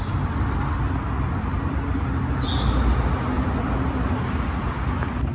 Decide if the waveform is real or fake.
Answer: real